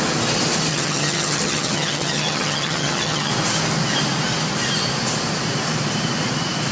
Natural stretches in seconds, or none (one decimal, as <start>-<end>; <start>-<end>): 0.0-0.7; 3.3-6.7

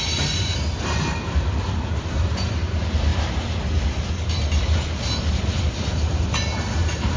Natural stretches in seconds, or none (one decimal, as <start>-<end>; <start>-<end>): 3.1-5.3

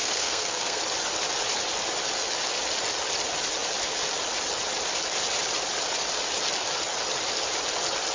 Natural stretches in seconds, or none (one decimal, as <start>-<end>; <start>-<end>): 0.8-8.1

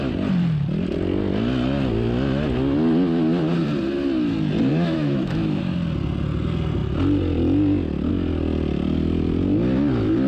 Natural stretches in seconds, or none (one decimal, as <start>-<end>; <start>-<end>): 0.0-4.7; 5.6-10.3

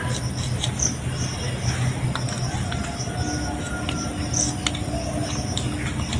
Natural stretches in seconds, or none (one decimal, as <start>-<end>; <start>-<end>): 0.0-6.2